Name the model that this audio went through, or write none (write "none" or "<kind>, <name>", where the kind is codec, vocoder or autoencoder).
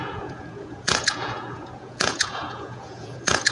vocoder, Vocos